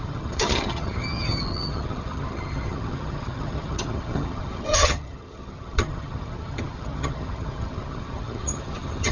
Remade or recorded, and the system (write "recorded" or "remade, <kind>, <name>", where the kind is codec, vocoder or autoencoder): remade, vocoder, HiFi-GAN